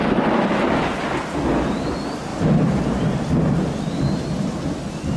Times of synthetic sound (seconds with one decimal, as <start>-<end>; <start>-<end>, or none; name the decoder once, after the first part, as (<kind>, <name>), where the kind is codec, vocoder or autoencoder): none